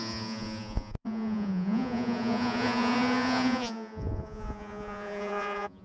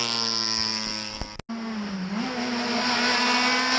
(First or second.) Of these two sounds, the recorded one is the second